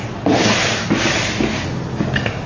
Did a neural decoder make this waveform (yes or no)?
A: no